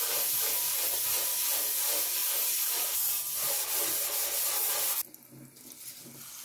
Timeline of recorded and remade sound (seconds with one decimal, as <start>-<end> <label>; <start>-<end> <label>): 0.0-6.4 recorded